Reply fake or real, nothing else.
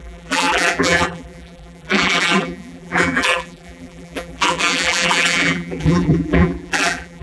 fake